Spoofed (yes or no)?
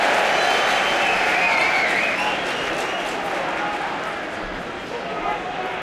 no